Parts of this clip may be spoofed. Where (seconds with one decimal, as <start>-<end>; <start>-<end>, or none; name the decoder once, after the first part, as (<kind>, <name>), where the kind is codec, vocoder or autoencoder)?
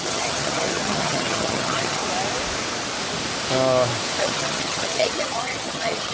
0.0-2.0 (vocoder, HiFi-GAN); 4.2-6.1